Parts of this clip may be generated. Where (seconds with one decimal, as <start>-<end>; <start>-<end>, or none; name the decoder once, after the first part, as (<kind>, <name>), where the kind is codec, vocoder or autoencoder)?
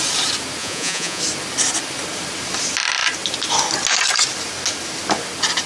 0.6-1.2 (vocoder, Vocos)